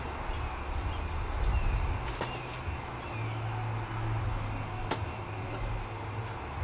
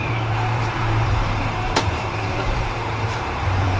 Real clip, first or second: first